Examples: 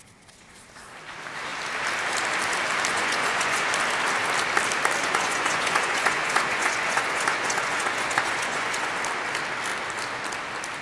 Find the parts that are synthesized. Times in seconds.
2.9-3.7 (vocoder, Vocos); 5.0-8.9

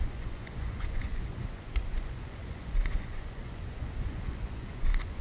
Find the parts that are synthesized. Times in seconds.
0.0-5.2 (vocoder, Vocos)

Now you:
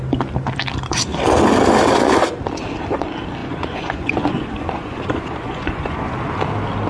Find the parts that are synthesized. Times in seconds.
3.4-6.0 (vocoder, Vocos)

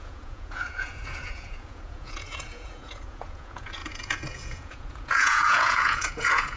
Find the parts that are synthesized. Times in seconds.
0.0-6.6 (vocoder, Vocos)

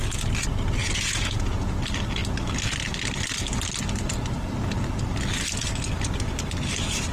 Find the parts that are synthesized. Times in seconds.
0.8-1.8 (vocoder, Vocos)